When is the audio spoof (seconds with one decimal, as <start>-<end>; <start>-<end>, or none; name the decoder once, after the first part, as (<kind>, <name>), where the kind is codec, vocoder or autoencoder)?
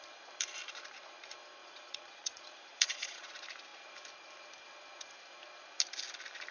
1.6-3.3 (vocoder, Vocos)